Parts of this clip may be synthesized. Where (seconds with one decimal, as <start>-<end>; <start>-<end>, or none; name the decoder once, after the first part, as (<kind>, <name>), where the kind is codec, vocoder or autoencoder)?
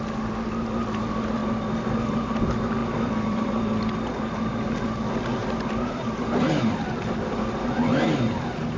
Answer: 2.8-3.8 (vocoder, BigVGAN v2)